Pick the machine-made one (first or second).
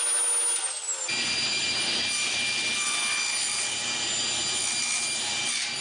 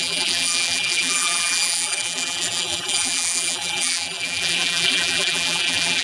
second